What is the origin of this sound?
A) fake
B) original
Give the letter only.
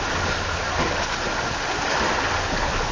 B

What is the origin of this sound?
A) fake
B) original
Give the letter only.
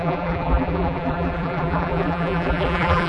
A